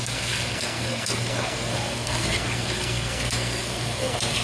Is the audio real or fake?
fake